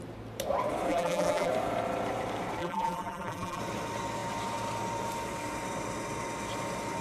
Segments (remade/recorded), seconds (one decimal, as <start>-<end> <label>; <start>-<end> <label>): 0.0-0.9 recorded; 0.9-1.5 remade; 1.5-2.6 recorded; 2.6-3.6 remade; 3.6-7.0 recorded